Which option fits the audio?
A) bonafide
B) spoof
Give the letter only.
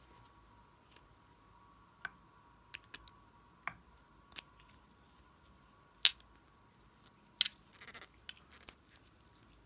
A